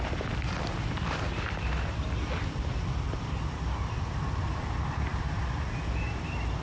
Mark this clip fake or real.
fake